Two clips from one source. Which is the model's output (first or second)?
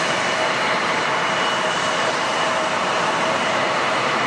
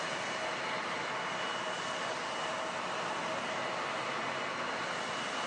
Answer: first